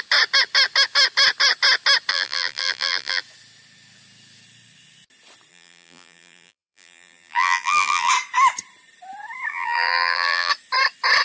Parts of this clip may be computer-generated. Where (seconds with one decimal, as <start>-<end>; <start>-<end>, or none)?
2.1-3.2; 5.5-8.1; 9.5-10.5

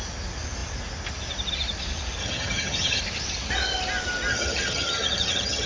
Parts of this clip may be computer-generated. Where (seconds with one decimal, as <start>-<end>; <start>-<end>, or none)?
2.2-3.0; 4.3-5.7

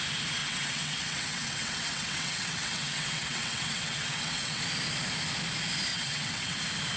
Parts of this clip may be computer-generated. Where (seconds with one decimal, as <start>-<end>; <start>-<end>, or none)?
0.4-4.6; 5.9-6.6

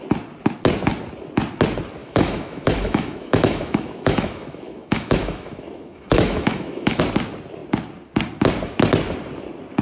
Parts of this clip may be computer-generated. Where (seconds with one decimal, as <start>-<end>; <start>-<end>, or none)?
2.0-7.0

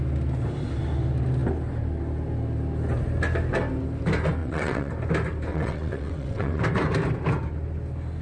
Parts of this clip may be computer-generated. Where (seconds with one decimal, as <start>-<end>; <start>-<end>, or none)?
4.4-4.9; 5.5-6.6

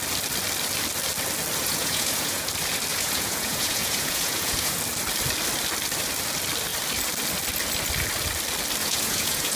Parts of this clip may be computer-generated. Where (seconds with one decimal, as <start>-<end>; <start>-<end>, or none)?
1.6-2.5; 2.9-4.8; 8.8-9.6

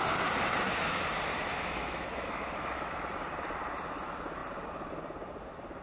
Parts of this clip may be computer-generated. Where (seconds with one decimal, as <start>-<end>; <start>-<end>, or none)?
1.5-3.0